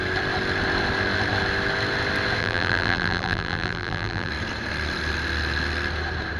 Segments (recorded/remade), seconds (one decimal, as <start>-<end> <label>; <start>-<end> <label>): 0.0-2.4 recorded; 2.4-4.3 remade; 4.3-6.4 recorded